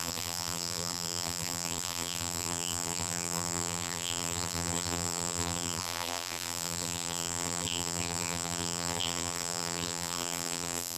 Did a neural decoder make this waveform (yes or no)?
yes